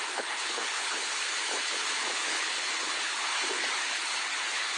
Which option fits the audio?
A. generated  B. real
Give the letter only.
A